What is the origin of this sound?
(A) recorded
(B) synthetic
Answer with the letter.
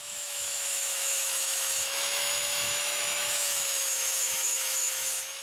B